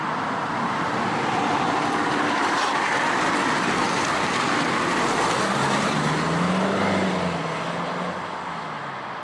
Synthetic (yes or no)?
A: no